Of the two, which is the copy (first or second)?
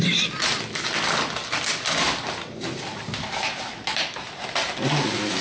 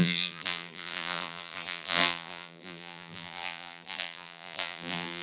second